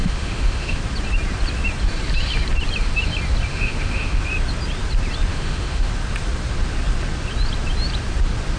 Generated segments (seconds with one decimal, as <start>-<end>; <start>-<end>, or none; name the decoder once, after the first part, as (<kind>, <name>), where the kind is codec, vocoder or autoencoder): 0.0-0.8 (autoencoder, DAC-VAE); 3.5-4.2; 5.3-5.9